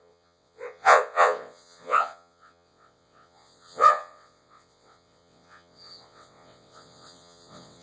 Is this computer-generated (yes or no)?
yes